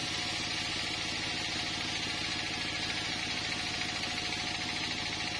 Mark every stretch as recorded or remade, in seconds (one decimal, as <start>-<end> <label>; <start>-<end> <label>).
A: 0.0-5.4 recorded